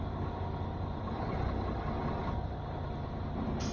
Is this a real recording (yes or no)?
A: yes